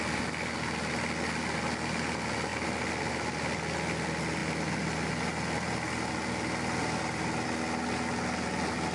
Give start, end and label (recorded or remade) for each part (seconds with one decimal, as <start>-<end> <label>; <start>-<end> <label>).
0.0-8.9 recorded